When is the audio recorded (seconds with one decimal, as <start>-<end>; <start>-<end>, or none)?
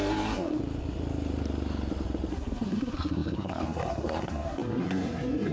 0.6-2.3